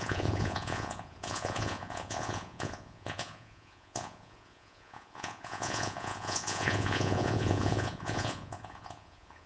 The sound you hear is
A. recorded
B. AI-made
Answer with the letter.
B